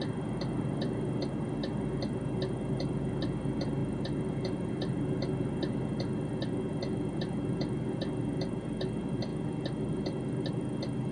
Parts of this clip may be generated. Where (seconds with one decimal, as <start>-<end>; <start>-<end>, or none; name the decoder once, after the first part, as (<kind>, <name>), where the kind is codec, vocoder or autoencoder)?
none